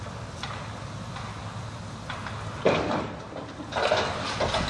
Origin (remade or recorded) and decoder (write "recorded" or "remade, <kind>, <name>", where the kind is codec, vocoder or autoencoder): recorded